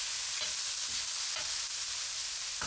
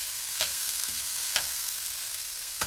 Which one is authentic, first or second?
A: first